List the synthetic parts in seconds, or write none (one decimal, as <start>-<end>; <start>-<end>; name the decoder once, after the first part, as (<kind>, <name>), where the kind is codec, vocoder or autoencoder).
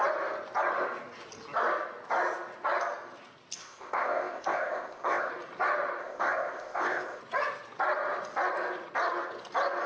3.6-5.3 (codec, ZipCodec); 6.0-7.2